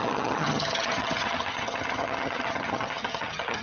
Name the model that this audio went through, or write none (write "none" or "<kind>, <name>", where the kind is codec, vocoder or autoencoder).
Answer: vocoder, HiFi-GAN